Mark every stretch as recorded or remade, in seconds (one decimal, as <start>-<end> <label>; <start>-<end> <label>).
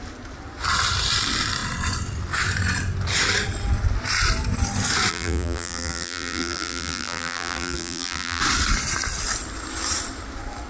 0.0-5.1 recorded; 5.1-8.4 remade; 8.4-10.7 recorded